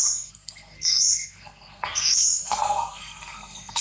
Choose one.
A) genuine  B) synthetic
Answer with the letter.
B